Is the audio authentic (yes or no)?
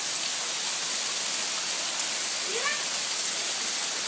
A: yes